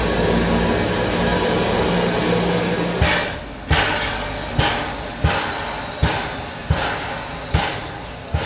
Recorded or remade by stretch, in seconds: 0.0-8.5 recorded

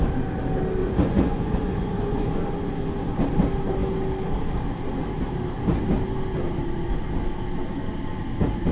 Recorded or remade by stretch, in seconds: 0.0-0.8 recorded; 0.8-2.3 remade; 2.3-8.7 recorded

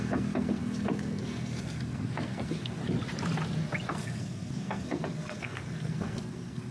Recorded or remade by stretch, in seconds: 0.0-2.8 remade; 2.8-3.9 recorded; 3.9-6.7 remade

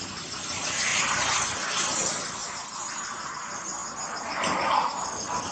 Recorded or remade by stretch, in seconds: 0.0-5.5 recorded

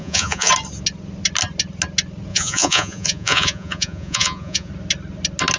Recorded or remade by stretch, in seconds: 0.0-0.5 remade; 0.5-2.3 recorded; 2.3-4.7 remade; 4.7-5.6 recorded

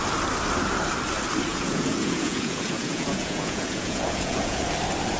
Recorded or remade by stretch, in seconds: 0.0-1.5 recorded; 1.5-4.6 remade; 4.6-5.2 recorded

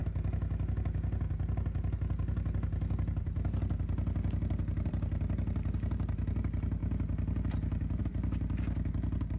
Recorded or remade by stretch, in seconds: 0.0-9.4 recorded